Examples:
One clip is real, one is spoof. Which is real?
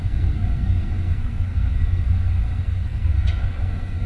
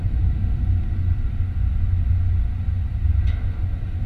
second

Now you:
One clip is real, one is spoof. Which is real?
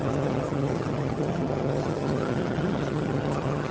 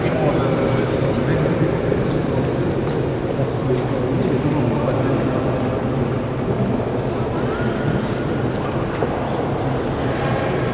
second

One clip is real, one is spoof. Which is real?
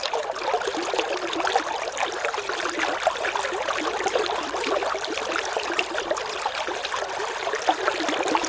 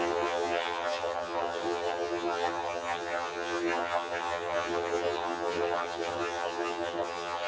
first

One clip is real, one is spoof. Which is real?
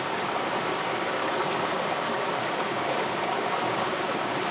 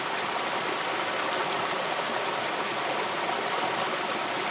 second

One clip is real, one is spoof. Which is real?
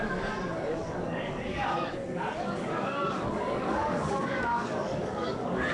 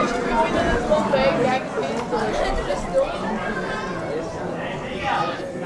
second